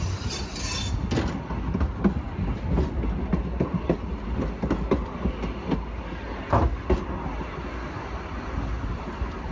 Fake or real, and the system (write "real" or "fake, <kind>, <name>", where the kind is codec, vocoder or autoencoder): real